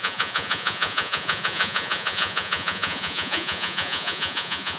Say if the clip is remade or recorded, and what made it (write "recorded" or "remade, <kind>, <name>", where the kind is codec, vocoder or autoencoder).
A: remade, vocoder, Vocos